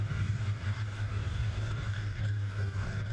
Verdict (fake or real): fake